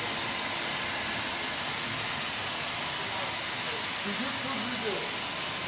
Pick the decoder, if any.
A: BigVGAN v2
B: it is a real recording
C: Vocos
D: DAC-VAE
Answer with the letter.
B